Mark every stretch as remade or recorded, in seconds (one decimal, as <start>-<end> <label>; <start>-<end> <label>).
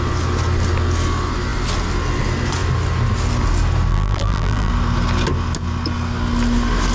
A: 0.0-3.9 recorded; 3.9-4.7 remade; 4.7-6.9 recorded